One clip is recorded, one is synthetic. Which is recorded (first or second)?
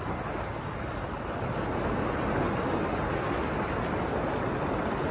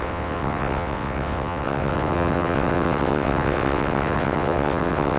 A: first